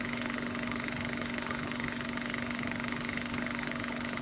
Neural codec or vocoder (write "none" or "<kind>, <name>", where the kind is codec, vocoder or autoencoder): codec, HILCodec